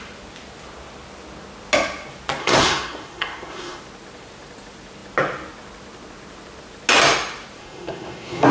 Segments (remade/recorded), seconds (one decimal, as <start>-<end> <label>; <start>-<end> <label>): 0.0-2.4 recorded; 2.4-3.8 remade; 3.8-7.6 recorded; 7.6-8.5 remade